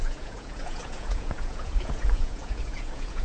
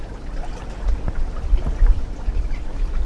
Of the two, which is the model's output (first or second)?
first